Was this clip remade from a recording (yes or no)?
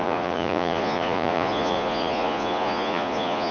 yes